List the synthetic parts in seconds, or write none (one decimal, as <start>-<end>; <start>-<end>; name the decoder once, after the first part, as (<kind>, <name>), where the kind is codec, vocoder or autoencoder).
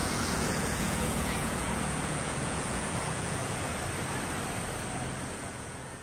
0.0-3.7 (vocoder, Vocos); 5.3-6.0